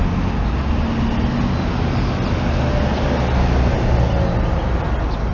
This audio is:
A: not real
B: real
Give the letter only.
B